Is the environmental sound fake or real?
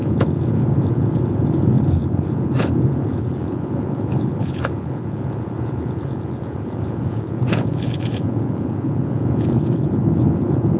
fake